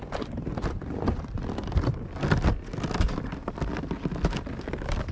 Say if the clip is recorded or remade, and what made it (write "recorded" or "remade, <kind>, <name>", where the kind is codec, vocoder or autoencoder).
recorded